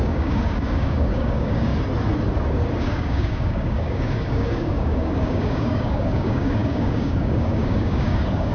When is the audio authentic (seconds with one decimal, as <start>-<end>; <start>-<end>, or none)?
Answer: 1.7-2.8